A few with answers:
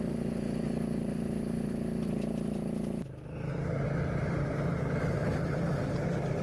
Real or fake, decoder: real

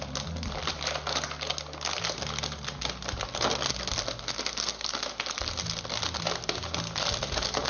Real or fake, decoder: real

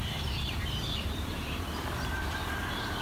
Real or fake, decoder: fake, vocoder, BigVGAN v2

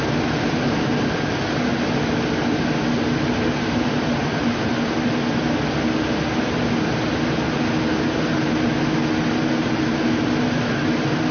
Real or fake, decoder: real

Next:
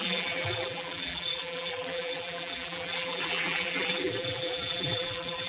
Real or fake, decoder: fake, vocoder, BigVGAN v2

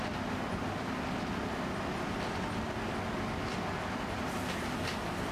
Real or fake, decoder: real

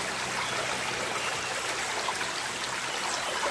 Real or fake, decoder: real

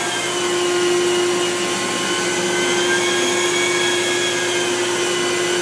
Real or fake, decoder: real